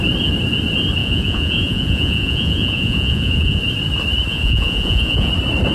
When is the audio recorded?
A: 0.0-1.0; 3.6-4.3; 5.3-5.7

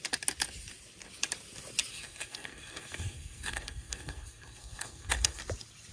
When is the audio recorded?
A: 0.0-1.9; 5.4-5.9

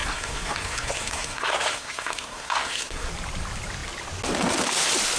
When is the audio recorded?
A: 3.1-5.2

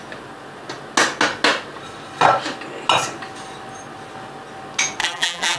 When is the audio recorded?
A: 0.0-5.0

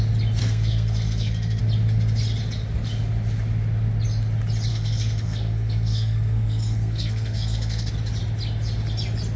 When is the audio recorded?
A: 0.0-0.4; 1.6-4.7; 7.9-9.4

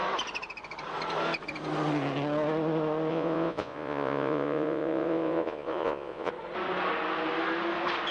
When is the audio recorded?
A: 0.0-3.1; 6.3-8.1

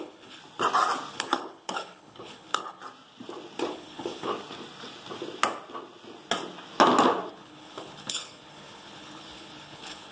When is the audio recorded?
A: 0.4-1.1; 2.8-3.7; 4.3-7.3